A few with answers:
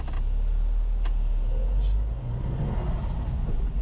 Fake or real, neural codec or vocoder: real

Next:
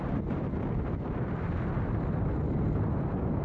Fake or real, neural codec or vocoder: real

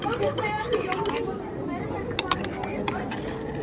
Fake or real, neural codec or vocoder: real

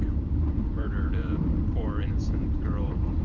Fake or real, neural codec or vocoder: fake, vocoder, BigVGAN v2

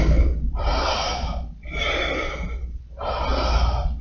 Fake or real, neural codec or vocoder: fake, vocoder, BigVGAN v2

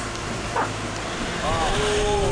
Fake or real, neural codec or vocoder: real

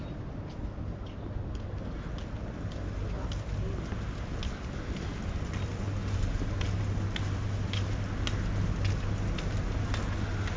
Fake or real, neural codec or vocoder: real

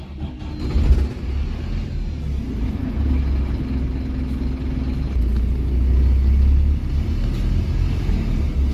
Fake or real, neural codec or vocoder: real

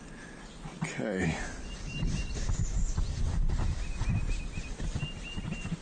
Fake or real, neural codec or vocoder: real